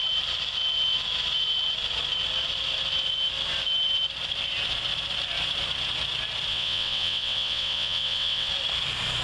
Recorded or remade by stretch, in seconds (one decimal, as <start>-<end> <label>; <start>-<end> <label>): 0.0-6.5 recorded; 6.5-8.5 remade; 8.5-9.2 recorded